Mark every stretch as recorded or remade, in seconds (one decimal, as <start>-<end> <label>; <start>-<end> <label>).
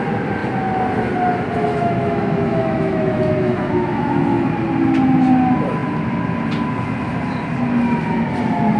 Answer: 0.0-1.7 recorded; 1.7-4.2 remade; 4.2-8.8 recorded